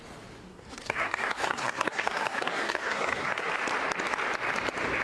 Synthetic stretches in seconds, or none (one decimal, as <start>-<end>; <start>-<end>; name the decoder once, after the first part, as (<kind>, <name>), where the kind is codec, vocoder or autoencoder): 0.5-3.5 (codec, SNAC)